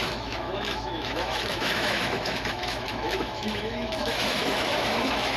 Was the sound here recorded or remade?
remade